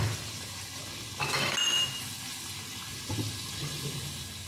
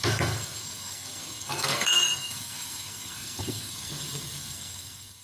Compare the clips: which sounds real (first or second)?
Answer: first